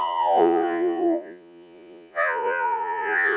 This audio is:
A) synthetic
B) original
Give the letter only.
A